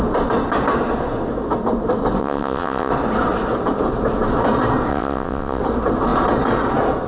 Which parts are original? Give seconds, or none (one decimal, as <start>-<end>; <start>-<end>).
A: 0.0-2.2; 2.9-4.9; 5.6-7.1